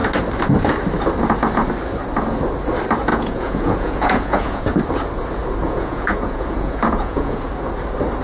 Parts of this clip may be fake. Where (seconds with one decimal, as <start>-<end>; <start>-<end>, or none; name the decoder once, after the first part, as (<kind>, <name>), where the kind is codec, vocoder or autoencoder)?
3.1-4.6 (vocoder, Vocos); 5.6-7.5